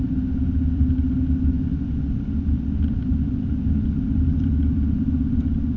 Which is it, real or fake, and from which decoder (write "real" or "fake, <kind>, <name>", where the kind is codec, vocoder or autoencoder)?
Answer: real